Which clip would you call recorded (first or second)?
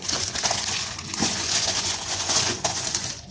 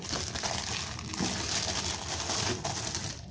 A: second